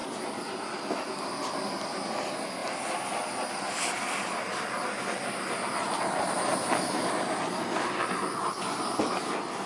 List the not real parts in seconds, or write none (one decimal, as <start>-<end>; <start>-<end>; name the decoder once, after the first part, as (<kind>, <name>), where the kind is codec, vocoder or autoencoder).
none